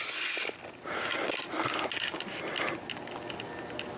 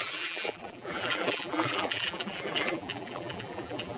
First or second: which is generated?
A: second